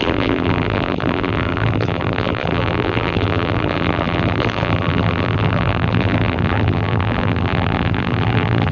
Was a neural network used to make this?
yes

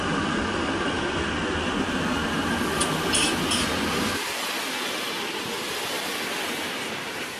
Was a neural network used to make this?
no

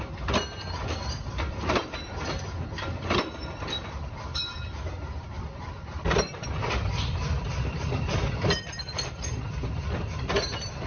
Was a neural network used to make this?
yes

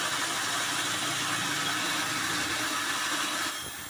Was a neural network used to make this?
no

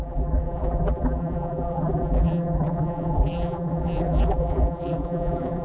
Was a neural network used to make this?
yes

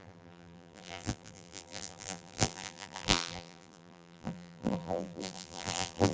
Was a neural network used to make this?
yes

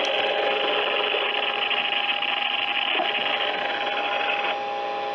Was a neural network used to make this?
no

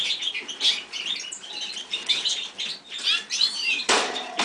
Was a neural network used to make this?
yes